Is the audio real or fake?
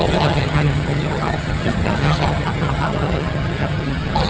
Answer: fake